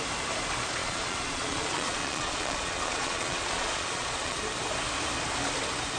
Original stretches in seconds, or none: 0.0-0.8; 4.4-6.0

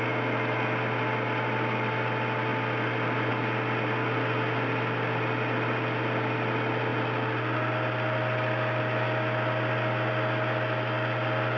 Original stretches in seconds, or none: 0.0-11.6

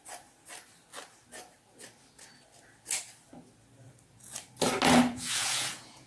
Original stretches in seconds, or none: 0.0-5.1

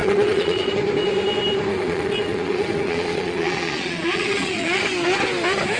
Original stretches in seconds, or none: 0.7-1.7; 4.8-5.8

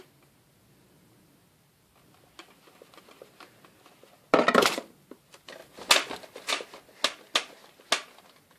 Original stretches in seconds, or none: 0.0-8.6

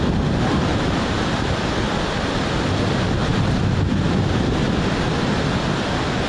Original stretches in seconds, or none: 0.0-6.3

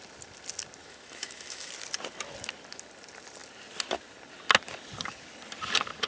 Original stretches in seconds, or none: 0.0-0.8; 1.7-6.1